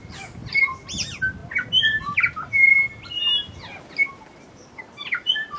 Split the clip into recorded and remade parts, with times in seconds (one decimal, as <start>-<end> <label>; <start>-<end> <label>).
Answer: 0.0-5.6 recorded